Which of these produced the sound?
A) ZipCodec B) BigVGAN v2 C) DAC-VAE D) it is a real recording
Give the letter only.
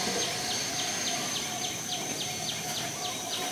D